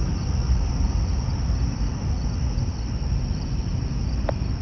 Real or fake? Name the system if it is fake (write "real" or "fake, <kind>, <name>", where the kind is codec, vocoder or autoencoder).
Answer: real